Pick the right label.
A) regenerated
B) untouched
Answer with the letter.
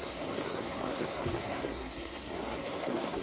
A